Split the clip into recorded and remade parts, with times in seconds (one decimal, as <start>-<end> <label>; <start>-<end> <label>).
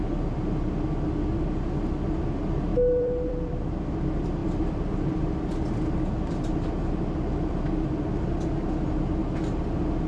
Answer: 0.0-2.7 recorded; 2.7-3.7 remade; 3.7-4.4 recorded; 4.4-5.2 remade; 5.2-10.1 recorded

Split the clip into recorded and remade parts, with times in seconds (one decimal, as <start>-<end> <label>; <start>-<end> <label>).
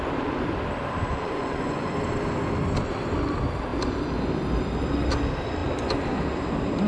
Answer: 0.0-1.1 recorded; 1.1-1.9 remade; 1.9-6.9 recorded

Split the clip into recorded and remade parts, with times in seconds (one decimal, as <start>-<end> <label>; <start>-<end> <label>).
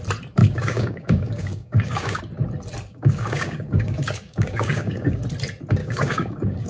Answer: 0.0-0.4 recorded; 0.4-2.2 remade; 2.2-2.9 recorded; 2.9-5.2 remade; 5.2-5.8 recorded; 5.8-6.7 remade